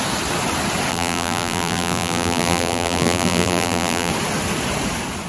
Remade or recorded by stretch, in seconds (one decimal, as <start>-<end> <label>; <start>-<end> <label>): 0.0-0.9 recorded; 0.9-4.1 remade; 4.1-5.3 recorded